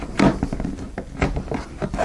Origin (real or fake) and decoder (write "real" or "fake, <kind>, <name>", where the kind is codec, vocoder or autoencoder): real